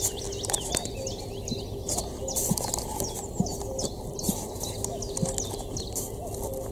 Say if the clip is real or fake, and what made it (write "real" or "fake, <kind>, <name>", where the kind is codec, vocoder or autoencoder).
real